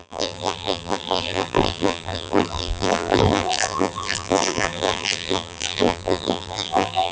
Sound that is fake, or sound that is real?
fake